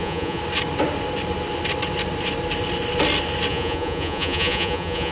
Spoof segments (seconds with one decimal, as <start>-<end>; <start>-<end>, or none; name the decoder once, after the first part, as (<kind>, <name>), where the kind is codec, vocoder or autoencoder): 0.0-0.4 (vocoder, Vocos); 3.5-5.1